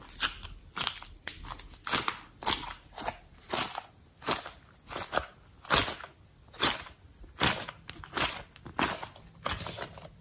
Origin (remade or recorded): recorded